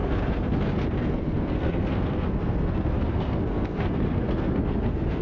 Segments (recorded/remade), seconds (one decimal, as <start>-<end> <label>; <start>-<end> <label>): 0.0-5.2 remade